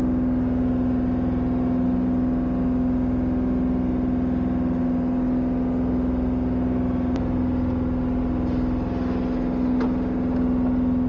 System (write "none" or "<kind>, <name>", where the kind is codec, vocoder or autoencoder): none